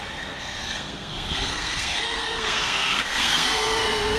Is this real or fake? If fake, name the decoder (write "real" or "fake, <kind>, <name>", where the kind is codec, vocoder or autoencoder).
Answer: fake, codec, SNAC